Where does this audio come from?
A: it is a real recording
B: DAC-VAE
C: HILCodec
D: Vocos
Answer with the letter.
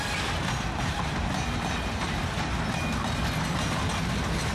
A